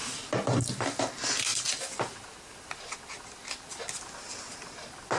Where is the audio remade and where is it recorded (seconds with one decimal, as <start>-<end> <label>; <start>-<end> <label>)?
0.0-5.2 recorded